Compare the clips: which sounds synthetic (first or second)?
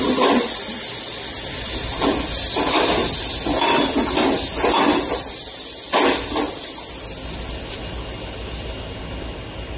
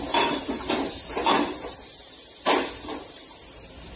second